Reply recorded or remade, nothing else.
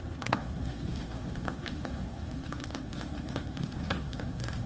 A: remade